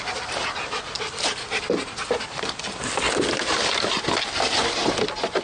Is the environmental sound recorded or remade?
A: recorded